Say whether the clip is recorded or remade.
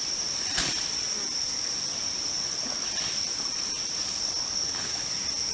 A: remade